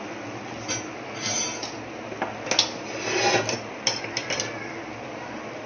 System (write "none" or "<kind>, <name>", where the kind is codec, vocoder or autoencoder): none